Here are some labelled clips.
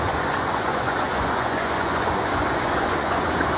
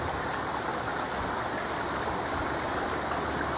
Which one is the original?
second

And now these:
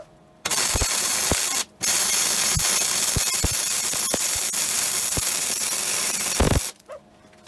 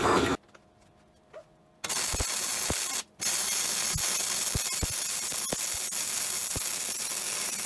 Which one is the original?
second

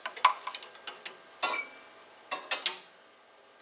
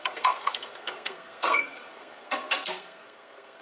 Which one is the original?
first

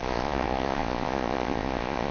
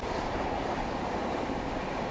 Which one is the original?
second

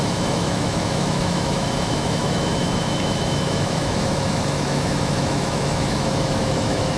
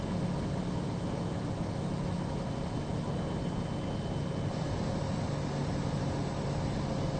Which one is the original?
second